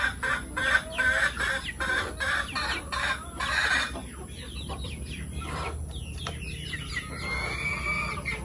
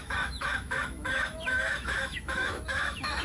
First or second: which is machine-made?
second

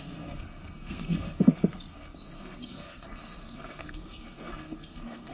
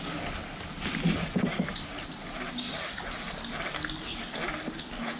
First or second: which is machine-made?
first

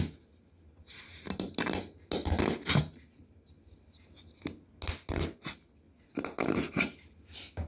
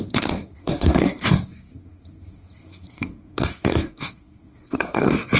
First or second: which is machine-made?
second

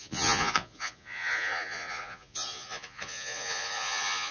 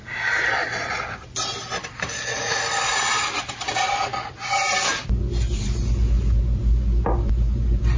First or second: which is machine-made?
first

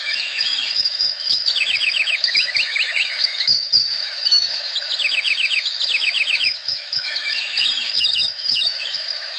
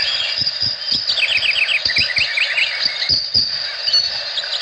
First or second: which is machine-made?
first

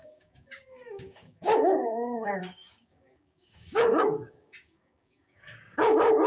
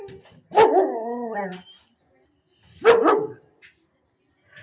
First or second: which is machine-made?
first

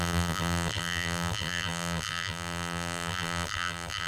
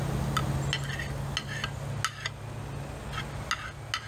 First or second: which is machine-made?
first